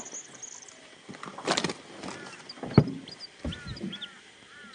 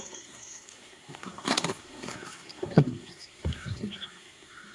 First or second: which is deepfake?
second